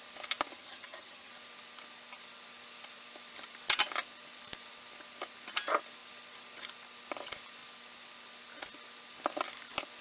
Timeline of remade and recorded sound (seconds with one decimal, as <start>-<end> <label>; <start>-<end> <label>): 0.0-0.5 recorded; 0.5-1.3 remade; 1.3-10.0 recorded